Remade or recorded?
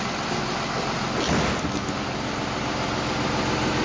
recorded